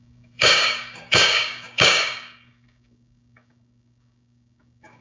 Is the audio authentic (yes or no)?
no